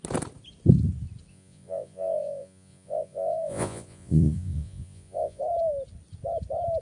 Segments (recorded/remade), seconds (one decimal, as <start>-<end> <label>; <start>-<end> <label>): 0.0-1.3 recorded; 1.3-5.4 remade; 5.4-6.8 recorded